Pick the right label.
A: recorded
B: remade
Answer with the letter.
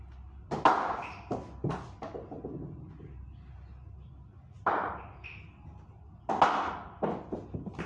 A